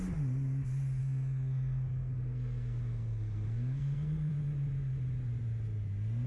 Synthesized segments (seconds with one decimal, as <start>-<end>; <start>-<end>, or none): 1.0-4.3